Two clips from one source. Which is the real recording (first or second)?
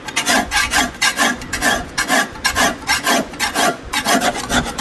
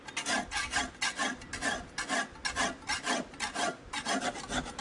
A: second